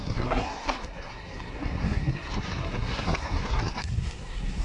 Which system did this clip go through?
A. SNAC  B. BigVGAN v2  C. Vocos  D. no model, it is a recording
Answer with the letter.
A